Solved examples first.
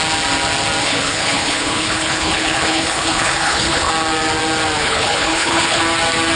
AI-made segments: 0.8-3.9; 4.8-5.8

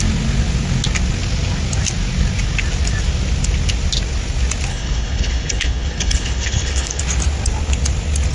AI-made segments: 4.7-7.0

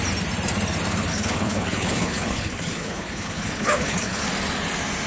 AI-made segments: 1.1-4.2

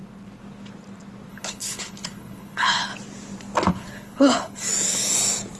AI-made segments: 1.3-2.9; 3.7-4.7

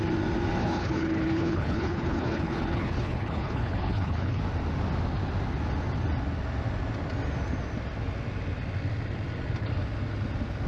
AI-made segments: 0.6-4.4

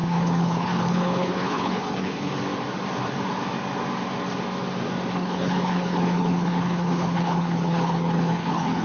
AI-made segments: 0.0-2.3; 5.1-8.8

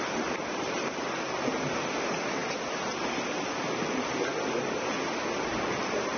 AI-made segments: none

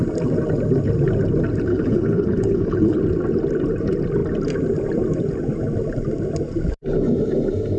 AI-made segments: 1.7-3.0